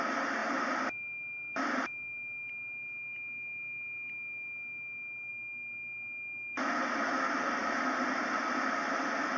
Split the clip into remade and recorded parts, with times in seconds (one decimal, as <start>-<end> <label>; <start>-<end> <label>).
0.0-9.4 recorded